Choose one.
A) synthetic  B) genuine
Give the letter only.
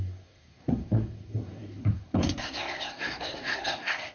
A